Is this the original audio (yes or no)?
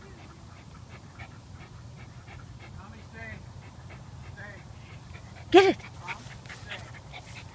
yes